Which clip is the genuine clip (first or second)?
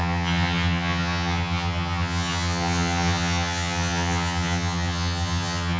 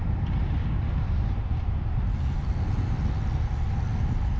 second